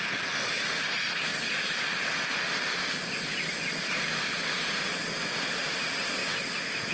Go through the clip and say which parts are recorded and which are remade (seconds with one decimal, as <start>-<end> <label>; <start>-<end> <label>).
0.0-1.3 remade; 1.3-5.4 recorded; 5.4-6.2 remade; 6.2-6.9 recorded